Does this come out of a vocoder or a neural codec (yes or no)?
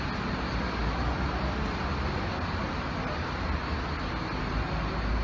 no